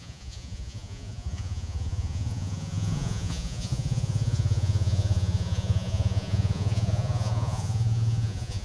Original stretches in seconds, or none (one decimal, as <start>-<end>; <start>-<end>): none